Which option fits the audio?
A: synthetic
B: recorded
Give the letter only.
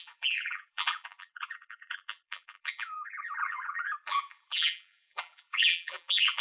A